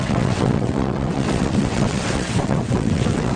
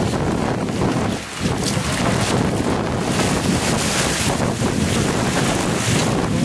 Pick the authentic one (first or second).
second